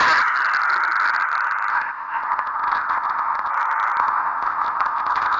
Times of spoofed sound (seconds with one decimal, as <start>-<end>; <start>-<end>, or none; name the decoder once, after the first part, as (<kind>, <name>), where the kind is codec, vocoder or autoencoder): 1.7-3.5 (codec, ZipCodec); 4.0-5.4